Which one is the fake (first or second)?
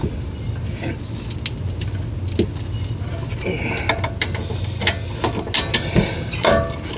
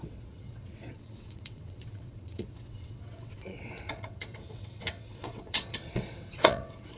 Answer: second